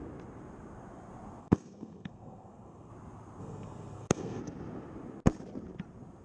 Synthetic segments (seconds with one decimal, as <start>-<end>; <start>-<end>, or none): 1.4-2.9; 3.4-4.4